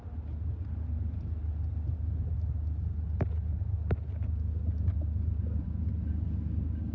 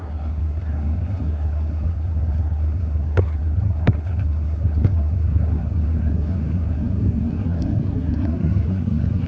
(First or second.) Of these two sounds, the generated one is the second